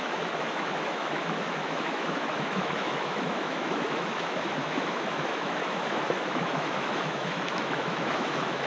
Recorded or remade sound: remade